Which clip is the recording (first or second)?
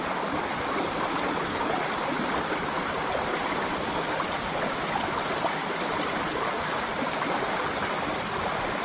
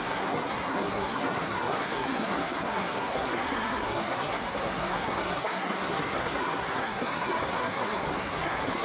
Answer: first